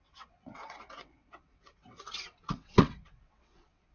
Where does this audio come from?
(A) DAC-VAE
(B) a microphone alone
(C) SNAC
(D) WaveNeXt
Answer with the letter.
D